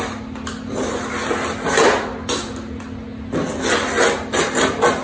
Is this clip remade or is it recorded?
recorded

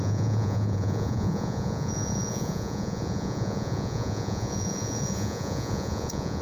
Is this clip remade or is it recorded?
remade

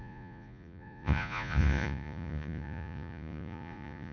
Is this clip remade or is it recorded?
remade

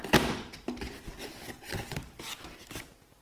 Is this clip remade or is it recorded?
recorded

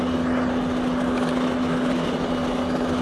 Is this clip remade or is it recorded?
recorded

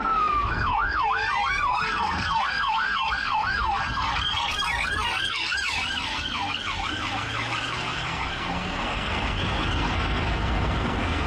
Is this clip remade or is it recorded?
remade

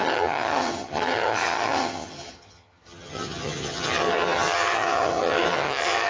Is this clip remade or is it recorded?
remade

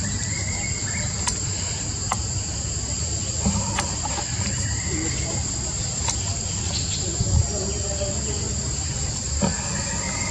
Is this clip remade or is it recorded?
recorded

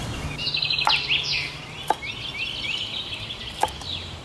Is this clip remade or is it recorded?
recorded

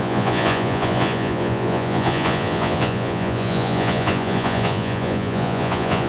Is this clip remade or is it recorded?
remade